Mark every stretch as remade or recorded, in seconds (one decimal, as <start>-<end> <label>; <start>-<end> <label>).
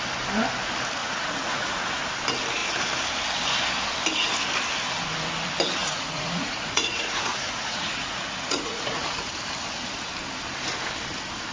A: 0.0-1.0 recorded; 1.0-2.0 remade; 2.0-5.8 recorded; 5.8-9.3 remade; 9.3-11.5 recorded